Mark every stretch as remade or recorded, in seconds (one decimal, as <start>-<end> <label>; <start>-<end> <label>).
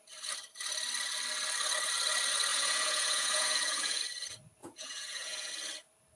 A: 0.0-2.5 recorded; 2.5-4.0 remade; 4.0-4.6 recorded; 4.6-5.5 remade; 5.5-6.1 recorded